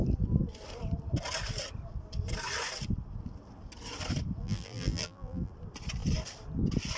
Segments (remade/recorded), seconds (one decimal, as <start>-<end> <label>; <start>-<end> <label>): 0.0-4.4 recorded; 4.4-5.5 remade; 5.5-7.0 recorded